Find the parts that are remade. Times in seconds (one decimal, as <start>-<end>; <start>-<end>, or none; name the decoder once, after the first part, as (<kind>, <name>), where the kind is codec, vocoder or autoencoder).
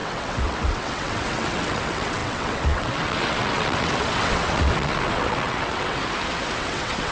0.0-6.0 (vocoder, WaveNeXt); 6.6-7.1